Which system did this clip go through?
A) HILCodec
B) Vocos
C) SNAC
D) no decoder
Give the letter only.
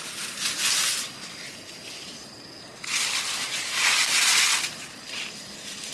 D